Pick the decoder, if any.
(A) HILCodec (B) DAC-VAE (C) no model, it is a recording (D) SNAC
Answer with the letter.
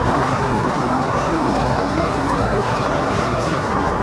D